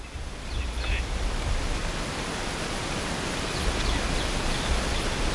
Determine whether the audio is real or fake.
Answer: real